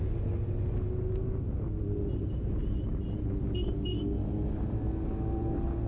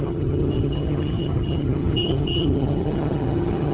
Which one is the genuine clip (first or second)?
first